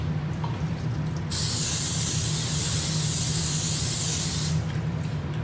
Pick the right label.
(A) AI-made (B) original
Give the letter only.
B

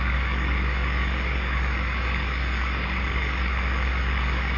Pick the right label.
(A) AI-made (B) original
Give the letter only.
A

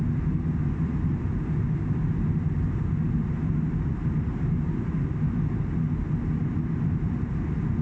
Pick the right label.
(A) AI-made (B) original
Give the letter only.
B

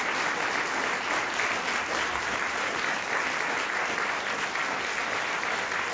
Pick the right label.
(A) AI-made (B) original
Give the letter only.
B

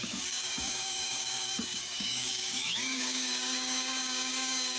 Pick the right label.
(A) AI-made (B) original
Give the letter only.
A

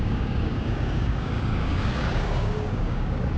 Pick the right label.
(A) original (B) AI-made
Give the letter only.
B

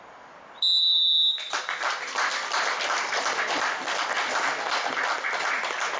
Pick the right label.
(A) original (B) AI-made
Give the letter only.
A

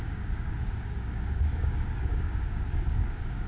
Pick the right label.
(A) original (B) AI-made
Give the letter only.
B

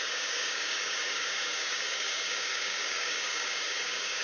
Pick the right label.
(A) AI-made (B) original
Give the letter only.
A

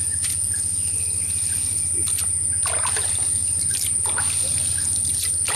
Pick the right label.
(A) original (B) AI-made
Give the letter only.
A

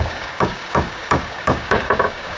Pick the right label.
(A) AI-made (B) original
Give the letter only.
A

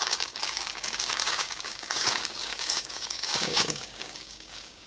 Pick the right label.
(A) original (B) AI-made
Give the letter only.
B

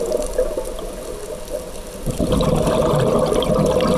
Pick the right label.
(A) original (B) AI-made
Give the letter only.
A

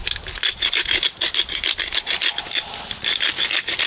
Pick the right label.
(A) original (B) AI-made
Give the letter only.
A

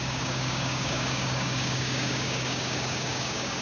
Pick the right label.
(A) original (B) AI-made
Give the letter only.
B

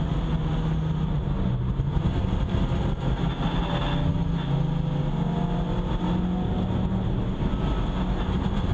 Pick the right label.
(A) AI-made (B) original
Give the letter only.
B